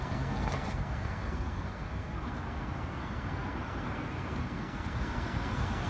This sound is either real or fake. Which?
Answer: fake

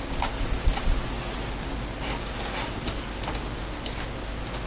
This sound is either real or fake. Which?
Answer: real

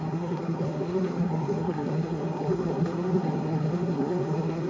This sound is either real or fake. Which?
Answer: fake